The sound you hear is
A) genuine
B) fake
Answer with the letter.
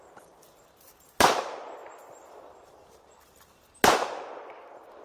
A